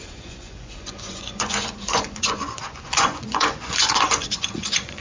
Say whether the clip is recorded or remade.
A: remade